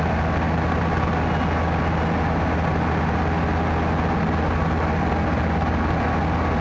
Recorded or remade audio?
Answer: recorded